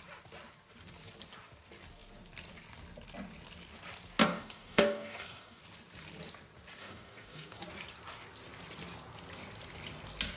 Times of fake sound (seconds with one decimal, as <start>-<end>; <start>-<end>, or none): 4.2-5.6; 6.8-7.6